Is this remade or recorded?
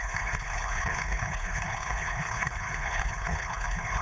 remade